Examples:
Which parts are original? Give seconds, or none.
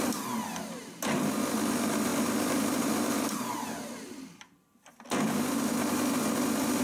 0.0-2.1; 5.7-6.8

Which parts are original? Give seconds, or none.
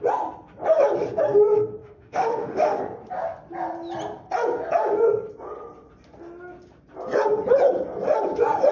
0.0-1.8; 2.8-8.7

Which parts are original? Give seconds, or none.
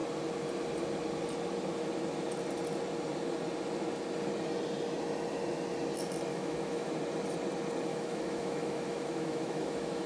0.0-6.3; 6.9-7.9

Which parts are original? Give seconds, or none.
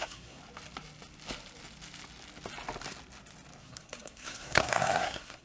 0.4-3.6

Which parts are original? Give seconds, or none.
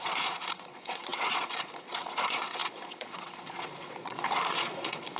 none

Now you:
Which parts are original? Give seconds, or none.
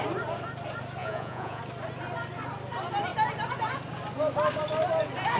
0.0-1.0; 1.6-5.4